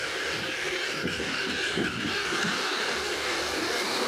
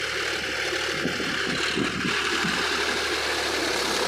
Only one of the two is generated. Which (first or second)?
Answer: first